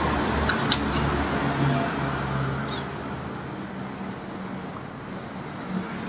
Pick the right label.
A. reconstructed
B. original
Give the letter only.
B